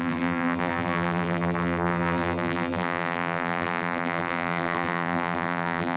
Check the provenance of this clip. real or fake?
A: fake